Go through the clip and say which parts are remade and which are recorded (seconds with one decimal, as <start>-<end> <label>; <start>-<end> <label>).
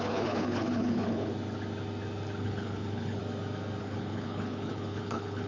0.0-1.3 remade; 1.3-2.4 recorded; 2.4-3.2 remade; 3.2-3.8 recorded; 3.8-5.5 remade